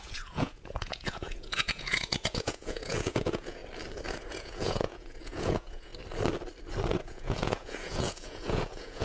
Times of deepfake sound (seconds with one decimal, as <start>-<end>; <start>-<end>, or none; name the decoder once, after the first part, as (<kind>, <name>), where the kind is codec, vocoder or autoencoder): 0.0-3.6 (vocoder, Vocos); 4.3-5.9; 7.0-9.0